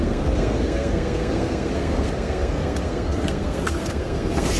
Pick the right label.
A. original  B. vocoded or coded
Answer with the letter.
B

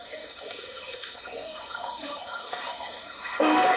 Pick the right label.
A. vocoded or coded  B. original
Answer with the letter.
A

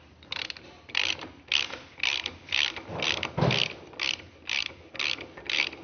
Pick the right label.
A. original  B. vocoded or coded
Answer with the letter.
A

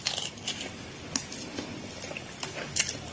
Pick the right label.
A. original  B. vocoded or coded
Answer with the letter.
A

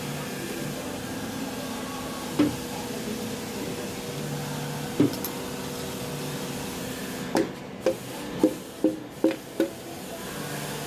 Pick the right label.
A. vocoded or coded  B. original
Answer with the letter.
B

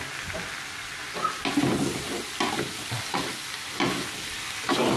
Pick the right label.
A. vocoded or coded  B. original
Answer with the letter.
B